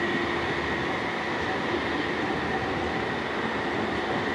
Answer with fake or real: real